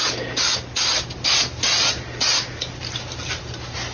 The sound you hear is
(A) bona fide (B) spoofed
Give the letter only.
A